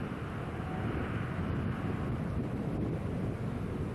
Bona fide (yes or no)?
yes